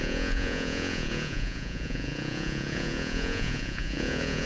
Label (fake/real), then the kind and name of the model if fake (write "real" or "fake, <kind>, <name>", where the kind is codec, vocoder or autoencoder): fake, vocoder, Vocos